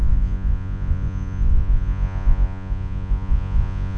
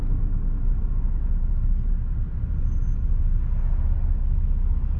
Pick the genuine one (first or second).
second